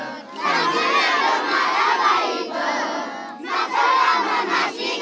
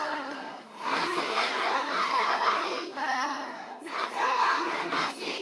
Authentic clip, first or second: first